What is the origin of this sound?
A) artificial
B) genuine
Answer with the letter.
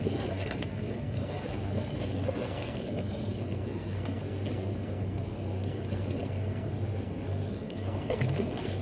A